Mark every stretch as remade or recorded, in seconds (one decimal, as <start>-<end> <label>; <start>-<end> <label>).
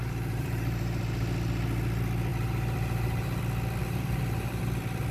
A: 0.0-1.0 remade; 1.0-2.3 recorded; 2.3-3.4 remade; 3.4-3.8 recorded; 3.8-4.6 remade; 4.6-5.1 recorded